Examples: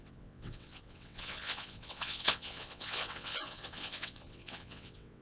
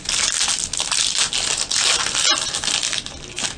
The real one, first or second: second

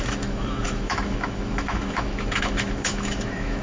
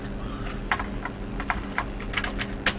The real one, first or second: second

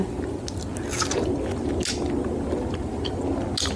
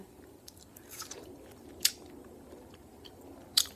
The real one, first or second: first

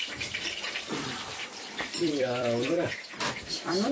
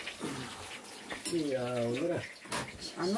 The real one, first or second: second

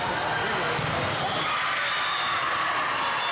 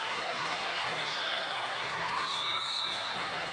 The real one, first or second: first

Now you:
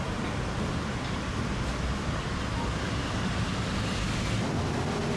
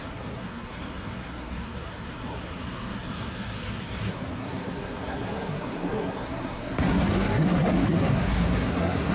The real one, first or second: first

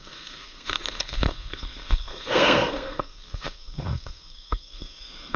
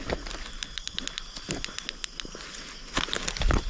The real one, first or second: second